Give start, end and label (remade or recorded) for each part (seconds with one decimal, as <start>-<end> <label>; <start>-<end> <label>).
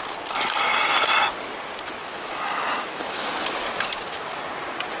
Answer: 0.0-2.0 recorded; 2.0-3.3 remade; 3.3-5.0 recorded